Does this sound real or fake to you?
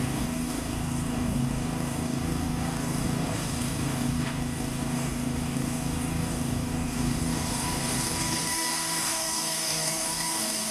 fake